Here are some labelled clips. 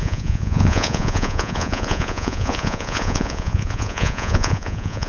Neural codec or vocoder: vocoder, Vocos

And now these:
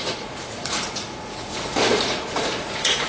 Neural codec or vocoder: vocoder, Vocos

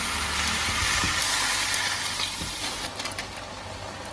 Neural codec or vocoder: none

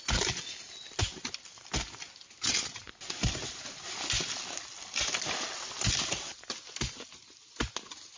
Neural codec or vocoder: none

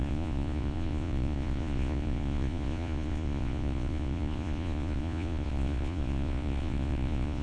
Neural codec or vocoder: vocoder, Vocos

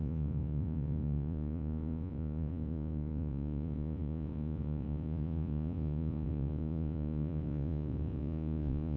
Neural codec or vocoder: vocoder, Vocos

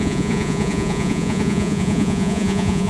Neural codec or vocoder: vocoder, Vocos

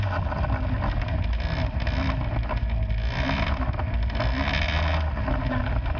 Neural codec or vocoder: none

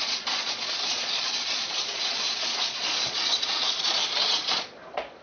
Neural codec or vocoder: vocoder, Vocos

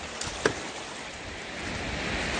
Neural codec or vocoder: none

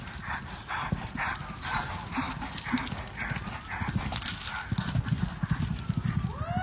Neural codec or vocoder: none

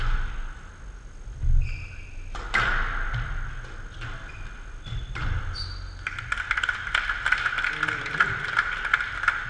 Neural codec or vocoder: none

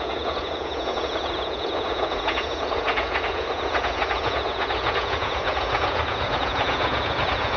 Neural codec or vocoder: vocoder, Vocos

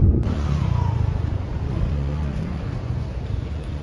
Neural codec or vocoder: vocoder, Vocos